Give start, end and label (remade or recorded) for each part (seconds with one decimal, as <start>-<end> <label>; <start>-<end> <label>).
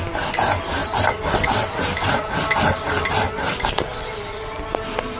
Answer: 0.0-5.2 recorded